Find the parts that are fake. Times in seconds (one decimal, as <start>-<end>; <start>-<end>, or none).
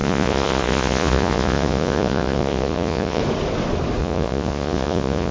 0.0-3.2; 4.0-5.3